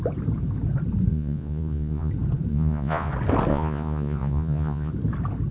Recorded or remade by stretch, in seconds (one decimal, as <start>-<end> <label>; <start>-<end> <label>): 0.0-1.1 recorded; 1.1-2.1 remade; 2.1-2.5 recorded; 2.5-3.1 remade; 3.1-3.5 recorded; 3.5-4.9 remade; 4.9-5.5 recorded